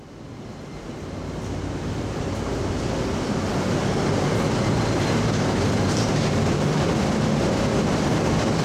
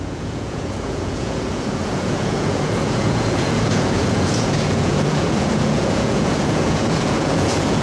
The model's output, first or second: second